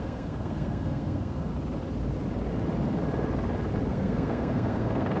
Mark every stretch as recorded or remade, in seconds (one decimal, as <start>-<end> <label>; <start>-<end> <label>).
0.0-1.5 remade; 1.5-3.9 recorded; 3.9-5.2 remade